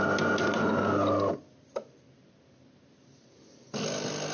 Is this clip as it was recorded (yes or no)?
yes